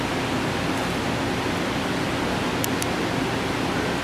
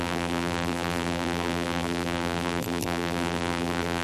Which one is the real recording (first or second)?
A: first